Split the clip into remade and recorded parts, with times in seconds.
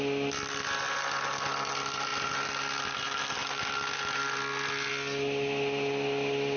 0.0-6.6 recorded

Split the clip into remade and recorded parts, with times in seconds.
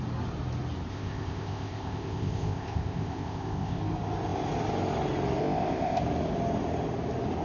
0.0-0.9 recorded; 0.9-3.8 remade; 3.8-5.4 recorded; 5.4-6.0 remade; 6.0-7.4 recorded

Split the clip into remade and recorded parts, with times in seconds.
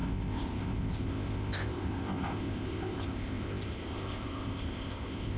0.0-5.4 remade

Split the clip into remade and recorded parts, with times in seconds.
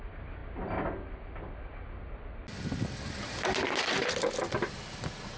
0.0-5.4 recorded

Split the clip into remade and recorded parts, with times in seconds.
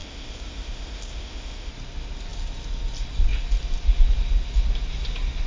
0.0-1.7 remade; 1.7-5.5 recorded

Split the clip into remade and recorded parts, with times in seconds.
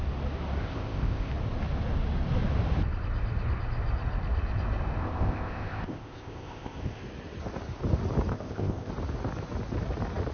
0.0-0.6 recorded; 0.6-1.3 remade; 1.3-5.0 recorded; 5.0-7.0 remade; 7.0-8.3 recorded; 8.3-8.9 remade; 8.9-10.3 recorded